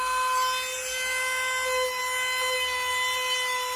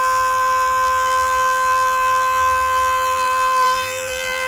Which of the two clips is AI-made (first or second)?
second